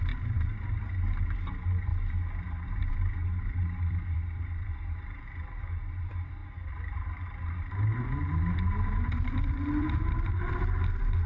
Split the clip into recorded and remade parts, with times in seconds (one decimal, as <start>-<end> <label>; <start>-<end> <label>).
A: 0.0-11.3 remade